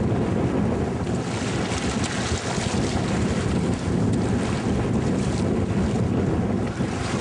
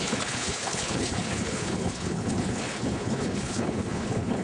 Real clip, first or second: first